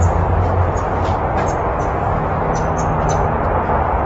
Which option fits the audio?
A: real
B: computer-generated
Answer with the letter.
A